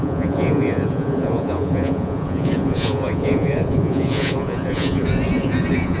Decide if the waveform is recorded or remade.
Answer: remade